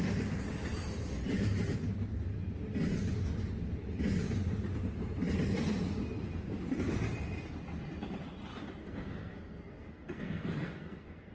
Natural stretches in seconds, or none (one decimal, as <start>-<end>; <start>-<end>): 0.0-8.8